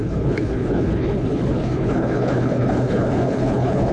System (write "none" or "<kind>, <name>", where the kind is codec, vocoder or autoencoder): codec, HILCodec